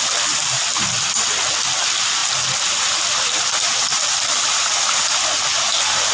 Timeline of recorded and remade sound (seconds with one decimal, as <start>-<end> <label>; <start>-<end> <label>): 0.0-6.1 recorded